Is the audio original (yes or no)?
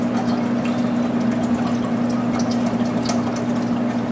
yes